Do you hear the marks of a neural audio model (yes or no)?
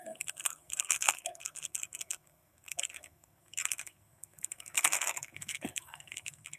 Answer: yes